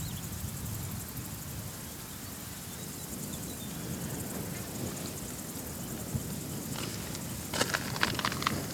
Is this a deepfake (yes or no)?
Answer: no